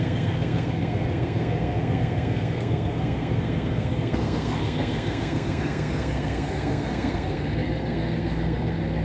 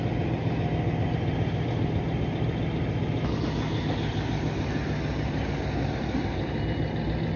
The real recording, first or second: second